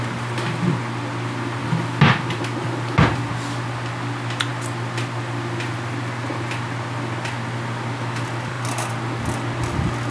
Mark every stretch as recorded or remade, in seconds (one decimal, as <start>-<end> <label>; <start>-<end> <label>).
0.0-10.1 recorded